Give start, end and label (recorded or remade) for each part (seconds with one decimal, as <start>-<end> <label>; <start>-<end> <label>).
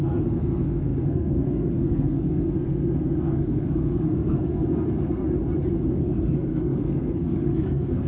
0.0-5.2 remade; 5.2-5.9 recorded; 5.9-8.1 remade